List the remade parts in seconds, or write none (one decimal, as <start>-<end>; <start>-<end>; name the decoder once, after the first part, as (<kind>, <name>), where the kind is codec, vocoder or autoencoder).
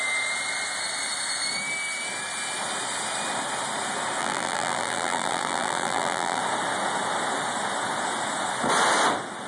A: 4.2-6.4 (vocoder, BigVGAN v2)